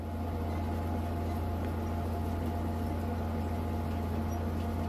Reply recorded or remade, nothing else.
recorded